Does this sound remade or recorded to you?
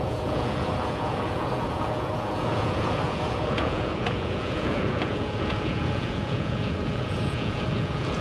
remade